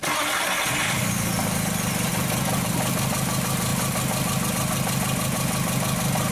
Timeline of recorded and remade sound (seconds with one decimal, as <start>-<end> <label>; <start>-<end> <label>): 0.0-6.3 recorded